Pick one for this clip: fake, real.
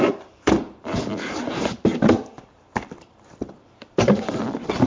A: real